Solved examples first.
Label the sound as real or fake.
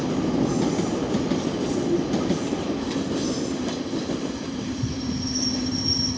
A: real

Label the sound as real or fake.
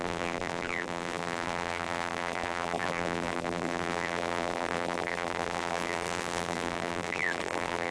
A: fake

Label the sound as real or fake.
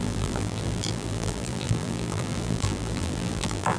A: fake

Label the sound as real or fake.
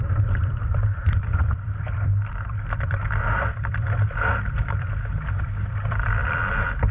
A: fake